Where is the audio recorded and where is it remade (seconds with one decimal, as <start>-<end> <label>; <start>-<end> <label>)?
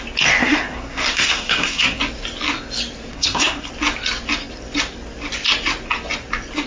0.0-0.4 recorded; 0.4-2.0 remade; 2.0-3.1 recorded; 3.1-3.7 remade; 3.7-6.7 recorded